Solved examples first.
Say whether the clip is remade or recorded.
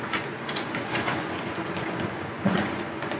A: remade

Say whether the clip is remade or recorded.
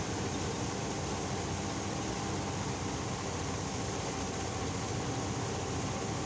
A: recorded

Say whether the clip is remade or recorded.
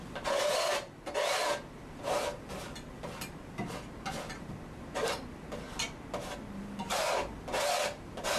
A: recorded